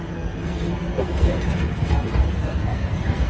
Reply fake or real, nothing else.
fake